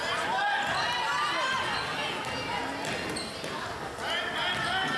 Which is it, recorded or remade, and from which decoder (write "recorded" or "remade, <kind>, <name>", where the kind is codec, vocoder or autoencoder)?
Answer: recorded